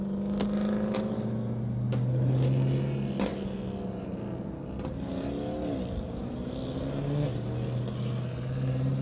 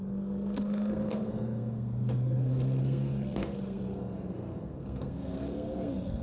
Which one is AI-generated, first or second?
second